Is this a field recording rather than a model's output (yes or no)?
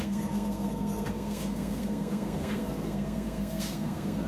no